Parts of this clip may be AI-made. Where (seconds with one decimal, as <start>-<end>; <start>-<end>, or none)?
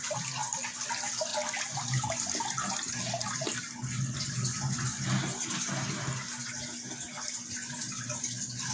1.3-3.6